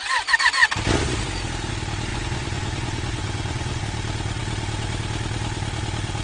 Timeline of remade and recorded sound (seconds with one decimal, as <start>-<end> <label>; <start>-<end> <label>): 0.0-2.1 recorded; 2.1-3.8 remade; 3.8-6.2 recorded

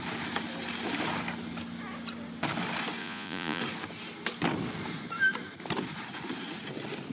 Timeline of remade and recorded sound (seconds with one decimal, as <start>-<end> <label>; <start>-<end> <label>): 0.0-3.0 recorded; 3.0-3.6 remade; 3.6-7.1 recorded

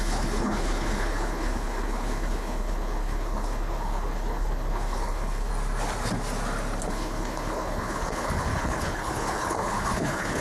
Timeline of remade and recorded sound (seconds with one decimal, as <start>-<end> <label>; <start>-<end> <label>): 0.0-5.5 remade; 5.5-6.9 recorded; 6.9-10.4 remade

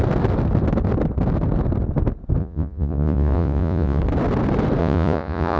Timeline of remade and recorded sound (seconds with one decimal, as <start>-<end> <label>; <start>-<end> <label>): 0.0-2.4 recorded; 2.4-4.0 remade; 4.0-4.8 recorded; 4.8-5.6 remade

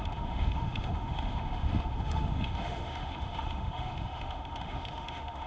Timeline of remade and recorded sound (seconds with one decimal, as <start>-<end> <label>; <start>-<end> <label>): 0.0-5.5 remade

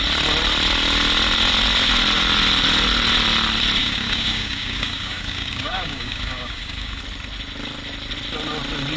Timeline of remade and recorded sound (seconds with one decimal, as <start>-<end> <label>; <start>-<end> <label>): 0.0-3.8 recorded; 3.8-7.0 remade; 7.0-9.0 recorded

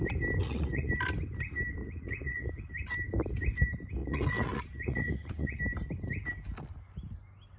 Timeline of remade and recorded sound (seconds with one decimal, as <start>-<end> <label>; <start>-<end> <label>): 0.0-0.4 recorded; 0.4-0.9 remade; 0.9-1.8 recorded; 1.8-2.7 remade; 2.7-4.0 recorded; 4.0-5.6 remade; 5.6-7.6 recorded